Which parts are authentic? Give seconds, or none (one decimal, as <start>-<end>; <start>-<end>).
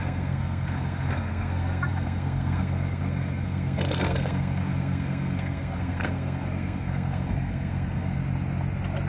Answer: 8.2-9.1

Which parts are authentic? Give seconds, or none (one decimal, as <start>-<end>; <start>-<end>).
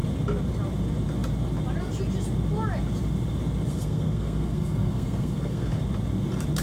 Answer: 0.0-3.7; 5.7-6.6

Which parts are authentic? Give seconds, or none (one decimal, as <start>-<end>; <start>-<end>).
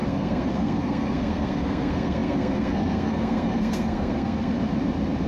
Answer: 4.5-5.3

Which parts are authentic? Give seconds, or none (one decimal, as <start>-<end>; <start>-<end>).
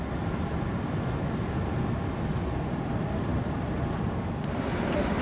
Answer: 0.0-5.2